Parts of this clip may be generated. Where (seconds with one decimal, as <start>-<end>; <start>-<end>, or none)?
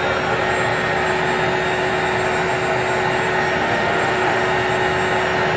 3.6-4.4